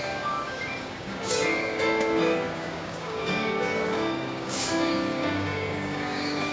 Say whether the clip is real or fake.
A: fake